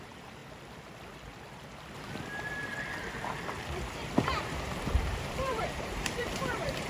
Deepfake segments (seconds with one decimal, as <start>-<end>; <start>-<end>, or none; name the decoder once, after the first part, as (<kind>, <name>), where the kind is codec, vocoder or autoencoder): 0.0-0.4 (vocoder, BigVGAN v2); 4.2-6.9